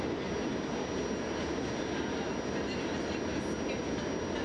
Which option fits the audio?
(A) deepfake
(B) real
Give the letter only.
B